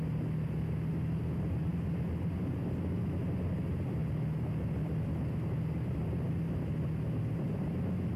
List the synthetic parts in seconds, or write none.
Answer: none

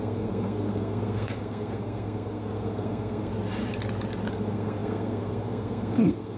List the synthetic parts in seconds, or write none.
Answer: 0.0-3.3 (codec, SNAC); 4.3-6.4

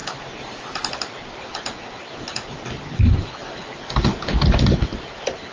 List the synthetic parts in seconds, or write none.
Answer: none

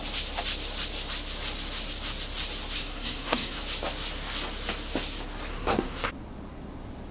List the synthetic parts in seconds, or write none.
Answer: 2.8-3.6 (codec, SNAC); 5.5-6.1